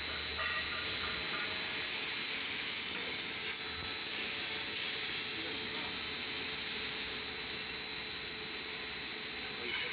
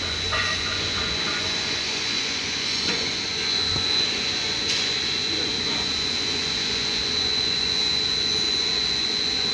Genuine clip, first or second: first